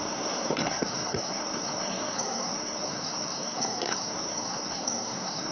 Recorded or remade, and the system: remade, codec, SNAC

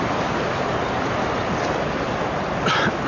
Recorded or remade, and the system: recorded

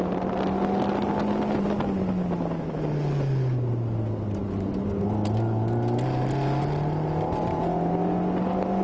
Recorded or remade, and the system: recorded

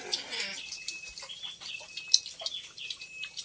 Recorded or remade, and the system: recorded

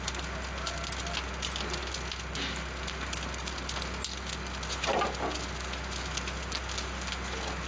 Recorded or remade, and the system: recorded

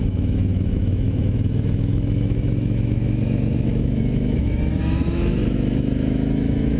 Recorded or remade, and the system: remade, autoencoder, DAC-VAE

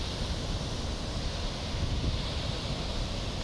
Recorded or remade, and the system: recorded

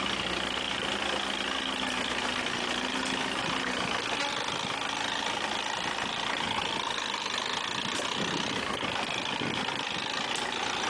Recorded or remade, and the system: recorded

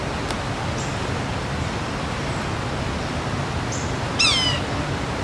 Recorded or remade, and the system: recorded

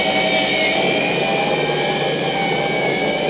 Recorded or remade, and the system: recorded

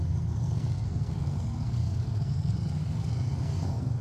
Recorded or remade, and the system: remade, codec, SNAC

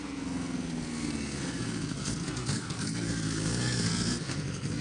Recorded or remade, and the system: remade, codec, SNAC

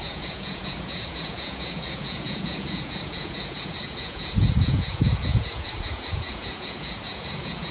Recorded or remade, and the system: remade, vocoder, Vocos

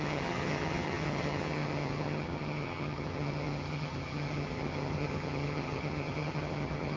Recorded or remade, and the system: remade, vocoder, HiFi-GAN